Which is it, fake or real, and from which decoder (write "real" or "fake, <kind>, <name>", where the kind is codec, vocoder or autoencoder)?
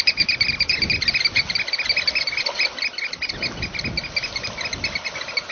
real